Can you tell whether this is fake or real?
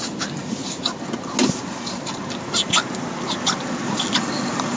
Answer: real